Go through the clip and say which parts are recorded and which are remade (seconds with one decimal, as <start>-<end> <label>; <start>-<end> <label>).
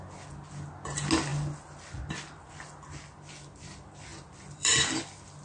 0.0-4.1 recorded; 4.1-5.4 remade